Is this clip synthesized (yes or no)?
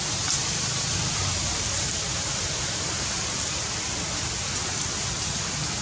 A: no